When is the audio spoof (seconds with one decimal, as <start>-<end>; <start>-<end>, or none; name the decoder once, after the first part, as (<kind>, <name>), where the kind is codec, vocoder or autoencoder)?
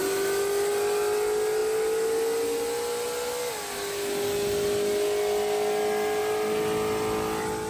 none